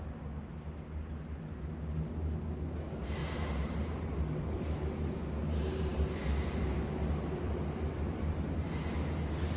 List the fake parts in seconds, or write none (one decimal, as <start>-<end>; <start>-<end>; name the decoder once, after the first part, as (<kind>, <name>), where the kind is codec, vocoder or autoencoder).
3.2-4.9 (vocoder, BigVGAN v2); 5.9-8.6

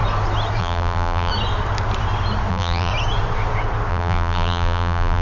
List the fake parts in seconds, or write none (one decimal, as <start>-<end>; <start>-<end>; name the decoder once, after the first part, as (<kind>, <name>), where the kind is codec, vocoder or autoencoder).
0.6-1.3 (vocoder, BigVGAN v2); 2.5-2.9; 3.9-5.2

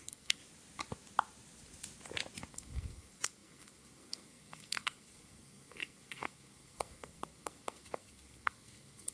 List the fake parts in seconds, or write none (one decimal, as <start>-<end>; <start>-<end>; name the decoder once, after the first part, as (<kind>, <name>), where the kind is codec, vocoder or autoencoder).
0.0-0.4 (codec, SNAC); 2.5-9.1

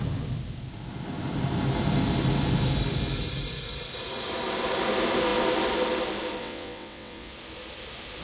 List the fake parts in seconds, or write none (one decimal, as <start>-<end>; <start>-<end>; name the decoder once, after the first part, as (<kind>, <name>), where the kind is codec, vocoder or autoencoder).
6.4-7.3 (vocoder, WaveNeXt)